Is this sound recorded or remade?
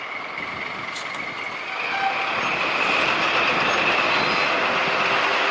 recorded